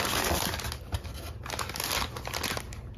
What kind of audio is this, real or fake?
real